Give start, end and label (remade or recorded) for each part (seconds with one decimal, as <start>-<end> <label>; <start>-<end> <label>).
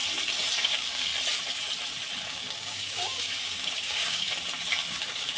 0.0-0.6 recorded; 0.6-1.1 remade; 1.1-2.3 recorded; 2.3-4.3 remade; 4.3-4.9 recorded; 4.9-5.4 remade